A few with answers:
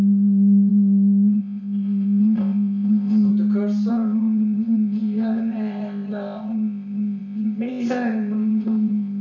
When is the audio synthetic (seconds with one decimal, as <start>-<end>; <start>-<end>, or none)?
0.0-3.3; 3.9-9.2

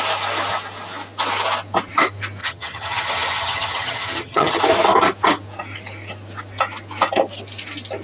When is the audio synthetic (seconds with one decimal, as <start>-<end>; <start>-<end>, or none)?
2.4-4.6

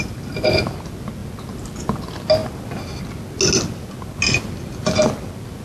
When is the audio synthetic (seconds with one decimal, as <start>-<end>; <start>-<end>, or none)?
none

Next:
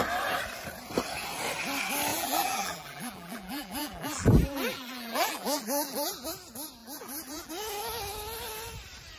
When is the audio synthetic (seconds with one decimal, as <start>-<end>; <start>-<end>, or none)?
2.1-6.3; 6.8-7.5